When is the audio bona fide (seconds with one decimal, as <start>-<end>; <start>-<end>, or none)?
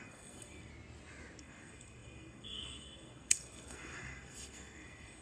0.7-1.4